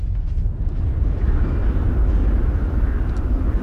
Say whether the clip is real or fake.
real